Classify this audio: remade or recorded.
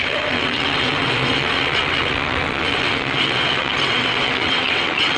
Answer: remade